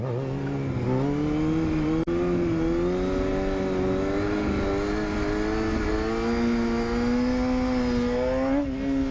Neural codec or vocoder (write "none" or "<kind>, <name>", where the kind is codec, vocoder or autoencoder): none